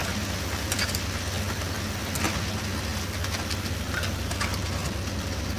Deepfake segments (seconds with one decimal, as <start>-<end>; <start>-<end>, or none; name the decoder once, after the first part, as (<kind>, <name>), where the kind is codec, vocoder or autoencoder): none